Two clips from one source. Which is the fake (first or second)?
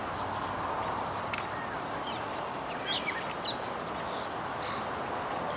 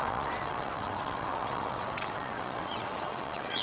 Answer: second